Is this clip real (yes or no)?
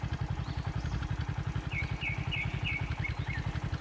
yes